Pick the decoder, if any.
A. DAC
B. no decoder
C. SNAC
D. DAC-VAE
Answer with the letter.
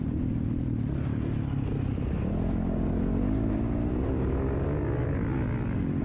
B